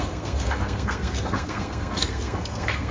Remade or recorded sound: remade